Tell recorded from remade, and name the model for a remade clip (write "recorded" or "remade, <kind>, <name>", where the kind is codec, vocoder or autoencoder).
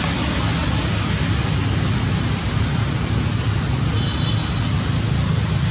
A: recorded